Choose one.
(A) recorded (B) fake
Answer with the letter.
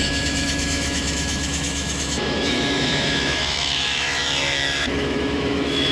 B